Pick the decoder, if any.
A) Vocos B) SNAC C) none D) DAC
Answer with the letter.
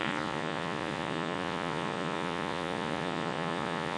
A